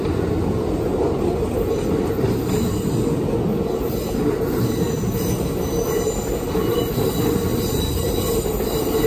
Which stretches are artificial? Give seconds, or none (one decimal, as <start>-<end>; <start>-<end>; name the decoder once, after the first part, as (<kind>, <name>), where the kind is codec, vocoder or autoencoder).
7.5-8.2 (vocoder, BigVGAN v2)